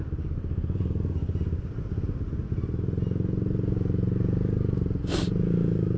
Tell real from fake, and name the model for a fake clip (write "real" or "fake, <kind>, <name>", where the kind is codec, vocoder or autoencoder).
real